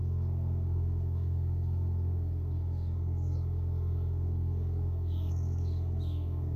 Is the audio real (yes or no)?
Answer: no